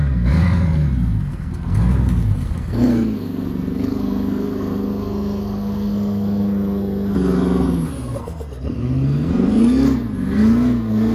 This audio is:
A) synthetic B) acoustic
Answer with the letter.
A